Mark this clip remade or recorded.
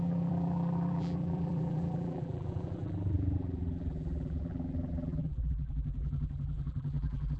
remade